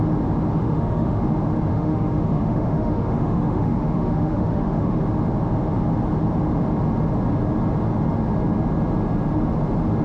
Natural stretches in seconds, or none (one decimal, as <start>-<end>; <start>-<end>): 0.0-0.6; 1.2-1.7; 5.0-10.0